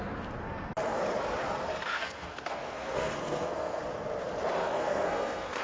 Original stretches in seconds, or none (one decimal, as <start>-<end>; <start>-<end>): 0.0-1.6; 3.8-4.6